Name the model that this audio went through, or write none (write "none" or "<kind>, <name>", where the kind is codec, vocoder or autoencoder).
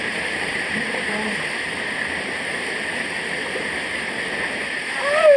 none